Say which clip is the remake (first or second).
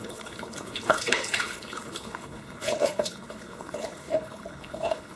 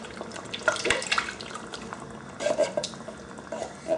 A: first